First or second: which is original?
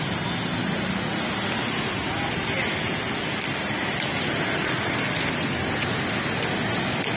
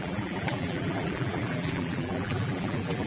first